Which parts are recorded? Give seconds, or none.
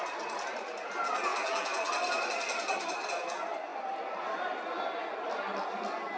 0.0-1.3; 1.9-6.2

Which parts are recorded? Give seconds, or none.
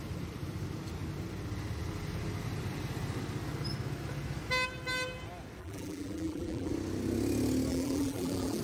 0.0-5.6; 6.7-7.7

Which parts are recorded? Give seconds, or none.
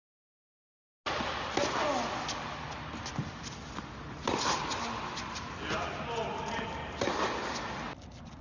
0.0-8.4